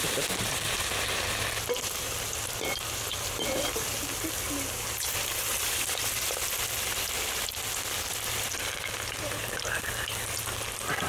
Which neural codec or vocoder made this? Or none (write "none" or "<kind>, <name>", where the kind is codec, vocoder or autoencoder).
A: none